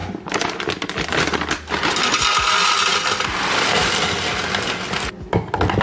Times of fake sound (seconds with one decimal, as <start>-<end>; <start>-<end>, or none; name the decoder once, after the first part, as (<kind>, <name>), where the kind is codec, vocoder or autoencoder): 2.9-4.3 (vocoder, BigVGAN v2)